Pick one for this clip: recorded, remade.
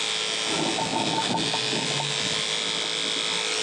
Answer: recorded